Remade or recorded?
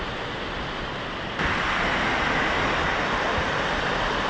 recorded